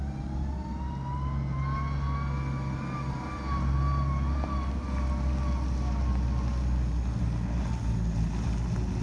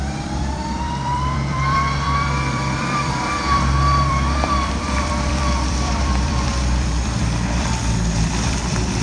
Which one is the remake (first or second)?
second